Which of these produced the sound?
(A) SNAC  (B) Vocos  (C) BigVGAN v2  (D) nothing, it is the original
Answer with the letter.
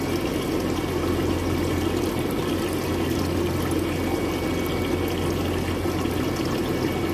D